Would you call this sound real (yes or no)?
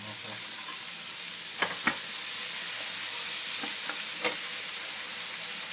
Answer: yes